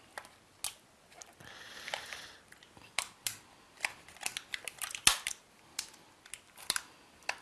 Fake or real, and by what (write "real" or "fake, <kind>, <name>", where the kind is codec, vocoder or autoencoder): real